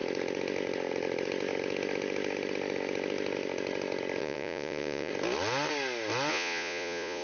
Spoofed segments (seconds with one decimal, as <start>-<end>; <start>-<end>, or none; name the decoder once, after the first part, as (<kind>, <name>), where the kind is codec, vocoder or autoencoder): 4.2-5.1 (vocoder, Vocos); 6.3-7.2